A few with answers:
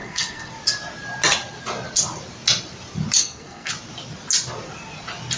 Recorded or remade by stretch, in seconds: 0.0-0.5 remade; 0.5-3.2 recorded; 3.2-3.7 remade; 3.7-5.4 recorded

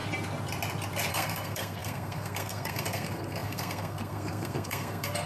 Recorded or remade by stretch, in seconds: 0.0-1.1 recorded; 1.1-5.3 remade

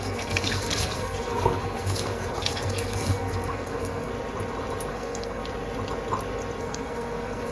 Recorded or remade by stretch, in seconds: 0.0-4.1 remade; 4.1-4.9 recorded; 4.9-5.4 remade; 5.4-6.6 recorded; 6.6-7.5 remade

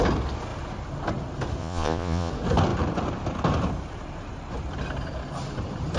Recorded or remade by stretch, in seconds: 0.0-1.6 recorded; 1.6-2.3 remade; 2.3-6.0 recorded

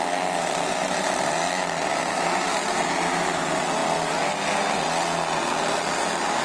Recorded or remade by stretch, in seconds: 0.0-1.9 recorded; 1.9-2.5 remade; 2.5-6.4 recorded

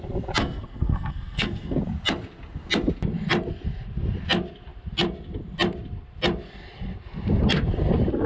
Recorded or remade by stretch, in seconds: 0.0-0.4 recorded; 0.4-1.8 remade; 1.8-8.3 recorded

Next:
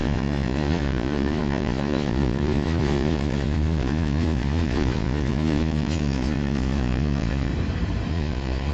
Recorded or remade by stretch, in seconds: 0.0-7.5 remade; 7.5-8.1 recorded; 8.1-8.7 remade

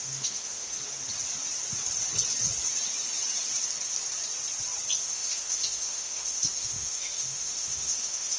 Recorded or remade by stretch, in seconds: 0.0-0.8 remade; 0.8-5.0 recorded; 5.0-8.4 remade